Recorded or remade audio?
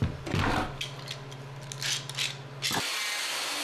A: recorded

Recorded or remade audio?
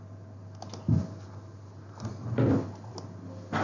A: recorded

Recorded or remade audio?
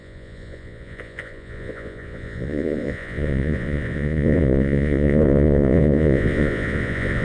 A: remade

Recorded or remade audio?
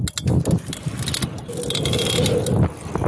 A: recorded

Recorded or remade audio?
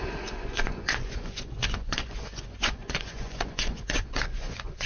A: remade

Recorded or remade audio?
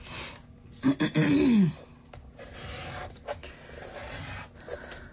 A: recorded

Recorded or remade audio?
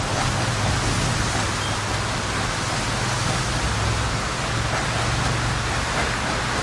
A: recorded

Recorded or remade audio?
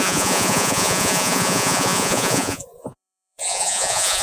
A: remade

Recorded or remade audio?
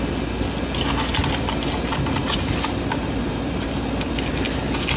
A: recorded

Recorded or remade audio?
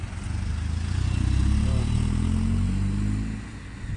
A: recorded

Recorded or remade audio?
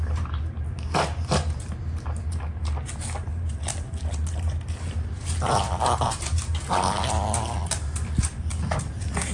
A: recorded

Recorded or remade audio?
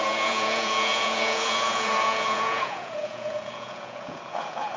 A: remade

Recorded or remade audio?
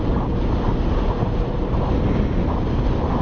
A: recorded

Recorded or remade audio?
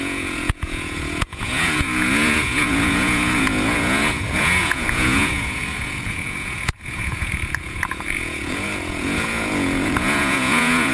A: remade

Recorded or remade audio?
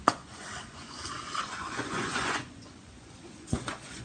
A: remade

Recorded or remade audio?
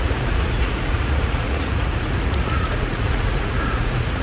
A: remade